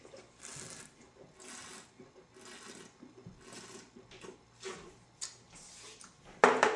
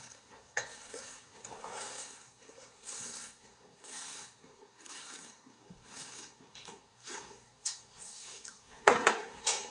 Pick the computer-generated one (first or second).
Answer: second